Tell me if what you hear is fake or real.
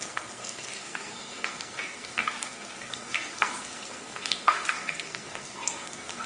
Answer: fake